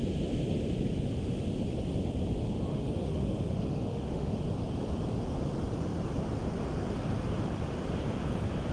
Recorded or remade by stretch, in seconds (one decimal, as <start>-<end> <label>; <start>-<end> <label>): 0.0-2.7 recorded; 2.7-4.4 remade; 4.4-8.7 recorded

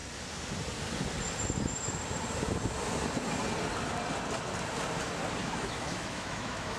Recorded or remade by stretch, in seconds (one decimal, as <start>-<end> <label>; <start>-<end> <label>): 0.0-5.4 recorded; 5.4-6.8 remade

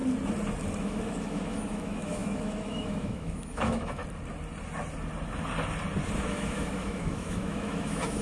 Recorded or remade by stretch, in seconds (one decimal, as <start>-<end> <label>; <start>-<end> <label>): 0.0-0.8 recorded; 0.8-4.0 remade; 4.0-6.2 recorded; 6.2-8.2 remade

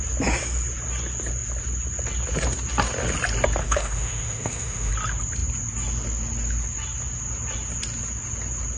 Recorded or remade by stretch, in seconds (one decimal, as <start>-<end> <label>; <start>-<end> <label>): 0.0-3.6 recorded; 3.6-4.9 remade; 4.9-8.8 recorded